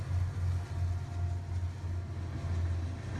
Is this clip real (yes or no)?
yes